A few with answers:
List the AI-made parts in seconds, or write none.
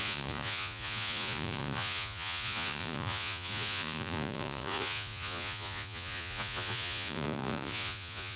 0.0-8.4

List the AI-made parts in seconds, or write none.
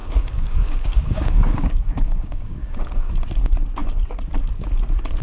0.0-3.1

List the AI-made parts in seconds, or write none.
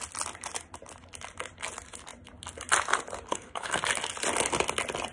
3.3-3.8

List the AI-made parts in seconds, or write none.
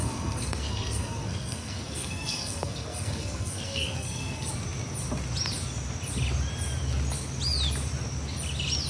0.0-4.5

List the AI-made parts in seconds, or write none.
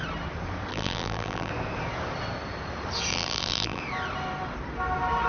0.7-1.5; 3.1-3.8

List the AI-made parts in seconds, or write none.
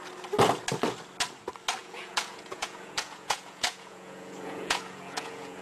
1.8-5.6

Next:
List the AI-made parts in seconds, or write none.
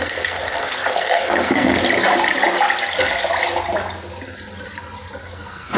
0.0-1.8; 5.2-5.8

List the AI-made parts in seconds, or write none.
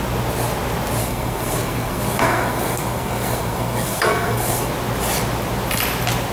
1.0-4.7